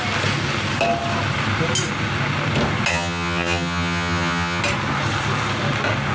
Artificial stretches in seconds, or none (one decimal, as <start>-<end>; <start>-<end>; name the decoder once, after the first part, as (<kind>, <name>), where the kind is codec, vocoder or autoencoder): 2.9-4.6 (vocoder, HiFi-GAN)